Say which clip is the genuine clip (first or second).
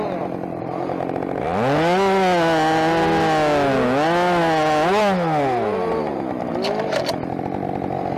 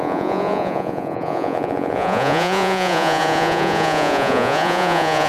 first